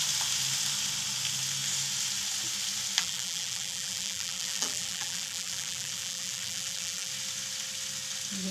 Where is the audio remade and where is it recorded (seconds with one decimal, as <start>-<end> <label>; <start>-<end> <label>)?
0.0-3.0 recorded; 3.0-7.1 remade; 7.1-8.5 recorded